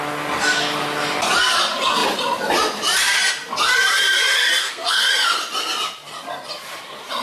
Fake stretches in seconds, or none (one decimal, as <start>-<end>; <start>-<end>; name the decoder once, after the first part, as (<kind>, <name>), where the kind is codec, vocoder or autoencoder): 4.6-5.1 (codec, SNAC)